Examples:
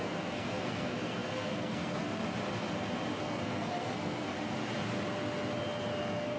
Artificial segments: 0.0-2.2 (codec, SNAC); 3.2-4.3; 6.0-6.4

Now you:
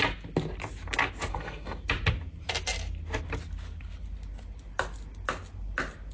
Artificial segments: 1.3-1.8 (codec, SNAC)

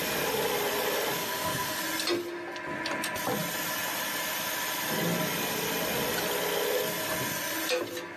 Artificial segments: 1.2-1.8 (autoencoder, DAC-VAE)

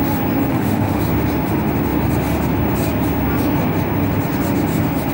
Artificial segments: 0.5-1.0 (autoencoder, DAC-VAE)

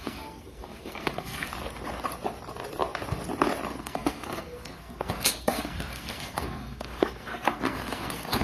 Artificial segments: 0.0-1.5 (codec, SNAC); 3.8-8.4

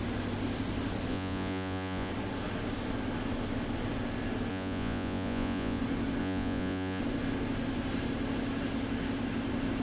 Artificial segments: 1.1-2.1 (vocoder, Vocos); 4.5-5.8; 6.2-7.0

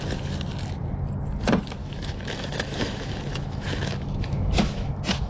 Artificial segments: 1.8-5.3 (autoencoder, DAC-VAE)

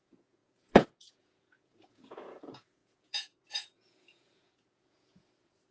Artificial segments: 0.0-5.7 (vocoder, Vocos)